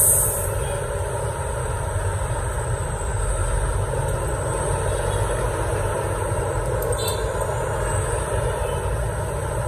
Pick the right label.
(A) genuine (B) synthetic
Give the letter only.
A